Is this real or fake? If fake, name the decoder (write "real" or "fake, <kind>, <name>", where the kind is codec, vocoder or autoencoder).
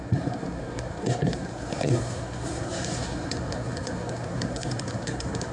fake, codec, SNAC